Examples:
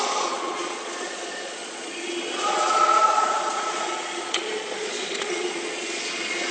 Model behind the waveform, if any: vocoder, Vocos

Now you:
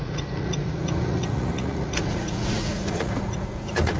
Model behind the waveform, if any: vocoder, Vocos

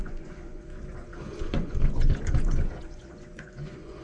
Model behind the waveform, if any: vocoder, Vocos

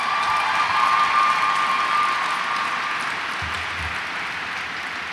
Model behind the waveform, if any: none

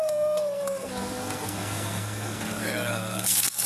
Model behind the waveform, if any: codec, SNAC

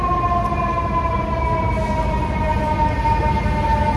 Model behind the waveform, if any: none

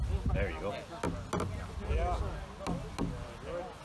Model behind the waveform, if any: none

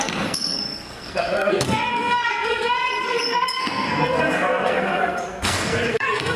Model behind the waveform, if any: codec, SNAC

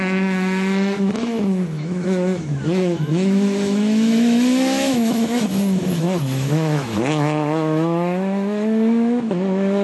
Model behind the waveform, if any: autoencoder, DAC-VAE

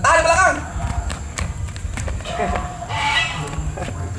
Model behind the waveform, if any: none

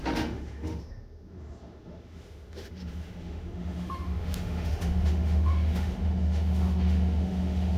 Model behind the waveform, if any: autoencoder, DAC-VAE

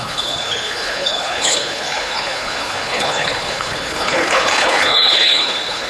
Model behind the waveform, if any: codec, HILCodec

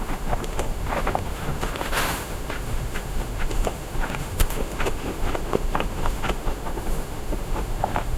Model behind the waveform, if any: autoencoder, DAC-VAE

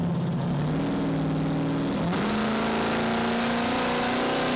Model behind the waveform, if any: none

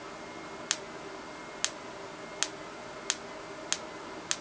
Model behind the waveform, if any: none